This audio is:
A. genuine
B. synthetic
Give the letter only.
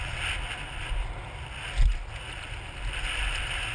A